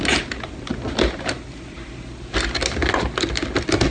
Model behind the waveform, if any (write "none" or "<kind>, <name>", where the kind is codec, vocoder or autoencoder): none